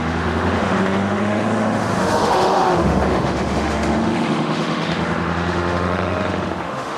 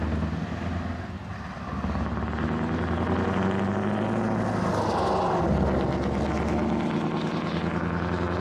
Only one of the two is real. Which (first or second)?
second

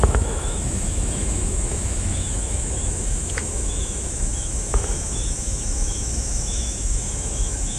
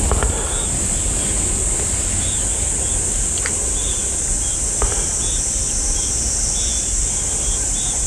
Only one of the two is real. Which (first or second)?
second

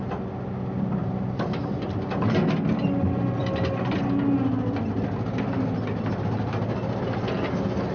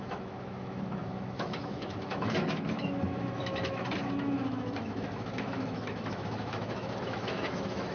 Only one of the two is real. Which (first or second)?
first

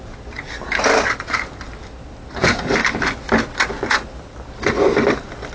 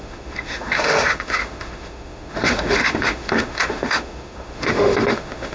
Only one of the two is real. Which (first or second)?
first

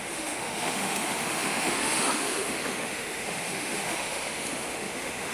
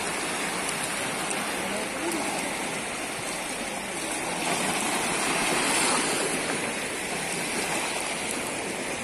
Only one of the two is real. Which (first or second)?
second